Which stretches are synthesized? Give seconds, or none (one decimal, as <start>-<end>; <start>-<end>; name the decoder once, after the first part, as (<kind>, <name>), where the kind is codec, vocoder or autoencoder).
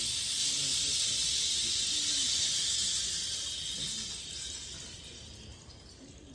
none